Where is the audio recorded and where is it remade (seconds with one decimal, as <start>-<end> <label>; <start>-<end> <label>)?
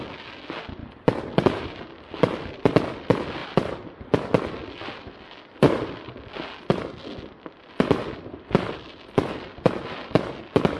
0.0-10.8 recorded